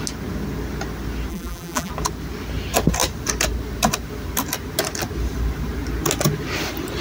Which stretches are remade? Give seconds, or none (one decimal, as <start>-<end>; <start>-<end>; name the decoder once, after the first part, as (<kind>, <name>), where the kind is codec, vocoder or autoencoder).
1.3-1.9 (vocoder, BigVGAN v2)